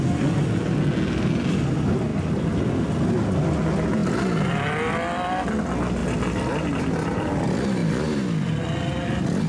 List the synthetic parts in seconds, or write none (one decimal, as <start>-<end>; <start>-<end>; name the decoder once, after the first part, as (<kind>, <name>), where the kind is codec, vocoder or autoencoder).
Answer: none